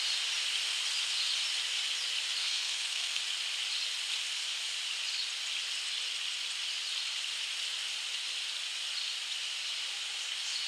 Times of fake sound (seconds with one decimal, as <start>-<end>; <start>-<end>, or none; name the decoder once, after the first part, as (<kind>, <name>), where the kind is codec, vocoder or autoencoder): 2.4-3.2 (codec, SNAC)